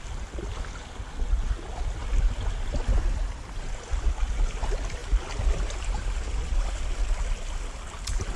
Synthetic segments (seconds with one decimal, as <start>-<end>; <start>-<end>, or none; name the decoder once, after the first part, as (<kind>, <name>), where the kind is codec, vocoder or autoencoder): 2.0-4.1 (vocoder, BigVGAN v2); 5.0-6.7